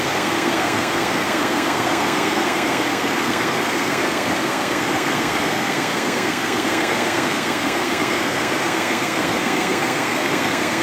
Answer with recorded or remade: remade